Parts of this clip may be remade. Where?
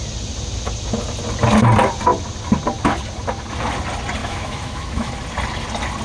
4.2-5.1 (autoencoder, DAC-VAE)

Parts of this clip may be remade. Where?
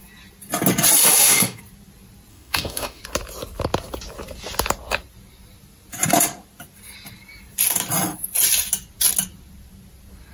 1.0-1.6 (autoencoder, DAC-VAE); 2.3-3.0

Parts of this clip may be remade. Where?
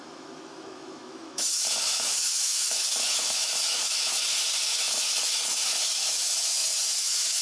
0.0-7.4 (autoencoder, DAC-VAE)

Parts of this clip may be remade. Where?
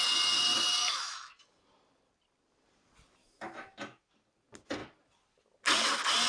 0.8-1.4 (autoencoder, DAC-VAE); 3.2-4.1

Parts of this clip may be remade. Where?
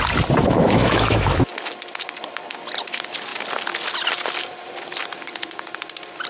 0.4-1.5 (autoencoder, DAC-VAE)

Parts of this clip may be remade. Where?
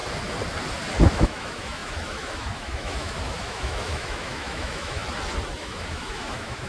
1.1-5.0 (autoencoder, DAC-VAE); 5.6-6.7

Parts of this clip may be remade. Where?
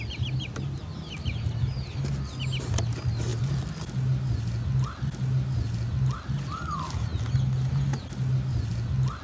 none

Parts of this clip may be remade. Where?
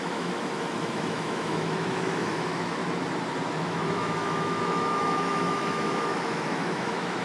0.0-2.8 (autoencoder, DAC-VAE); 3.6-7.2